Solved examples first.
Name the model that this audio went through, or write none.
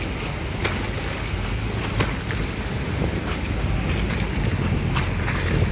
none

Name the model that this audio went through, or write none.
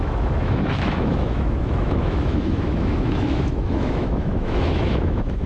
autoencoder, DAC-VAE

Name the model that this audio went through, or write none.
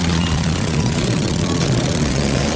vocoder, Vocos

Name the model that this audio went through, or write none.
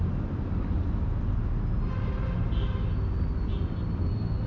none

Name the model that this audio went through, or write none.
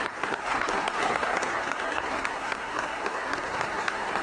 codec, SNAC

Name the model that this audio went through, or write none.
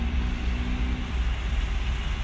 none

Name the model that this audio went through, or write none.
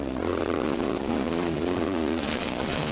vocoder, Vocos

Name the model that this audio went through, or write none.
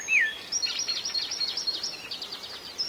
none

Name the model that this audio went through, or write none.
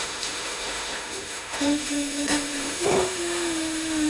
autoencoder, DAC-VAE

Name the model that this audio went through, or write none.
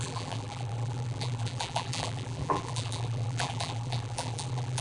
vocoder, BigVGAN v2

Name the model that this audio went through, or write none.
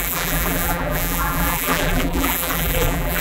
vocoder, BigVGAN v2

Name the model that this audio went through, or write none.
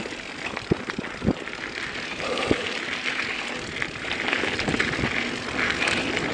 none